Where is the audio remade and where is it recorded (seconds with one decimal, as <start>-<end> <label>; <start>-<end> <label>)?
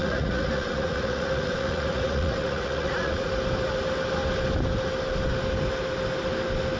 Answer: 0.0-3.3 remade; 3.3-6.8 recorded